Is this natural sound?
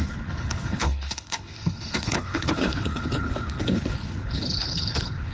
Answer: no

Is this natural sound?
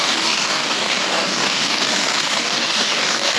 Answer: no